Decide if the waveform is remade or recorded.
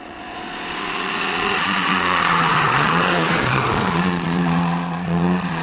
remade